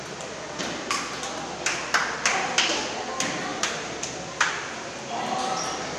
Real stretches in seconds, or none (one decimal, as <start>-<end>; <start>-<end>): 0.0-3.5; 4.1-6.0